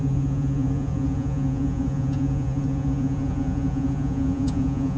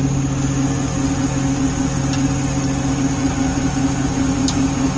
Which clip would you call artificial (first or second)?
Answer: first